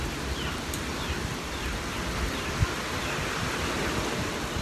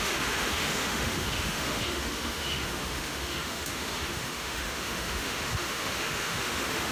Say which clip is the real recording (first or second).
first